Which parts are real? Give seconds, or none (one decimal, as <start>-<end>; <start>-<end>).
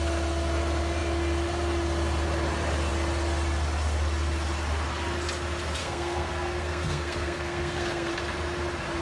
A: 0.0-5.8; 8.1-9.0